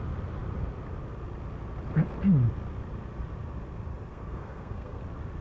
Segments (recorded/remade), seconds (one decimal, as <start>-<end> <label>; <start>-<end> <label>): 0.0-4.1 recorded; 4.1-5.0 remade; 5.0-5.4 recorded